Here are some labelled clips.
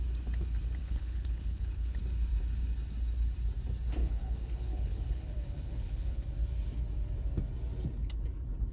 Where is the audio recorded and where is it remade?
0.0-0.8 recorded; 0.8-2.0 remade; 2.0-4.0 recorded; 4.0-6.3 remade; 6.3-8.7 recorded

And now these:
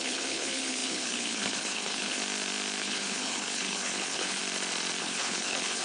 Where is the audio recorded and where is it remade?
0.0-2.2 remade; 2.2-2.8 recorded; 2.8-4.4 remade; 4.4-5.0 recorded; 5.0-5.8 remade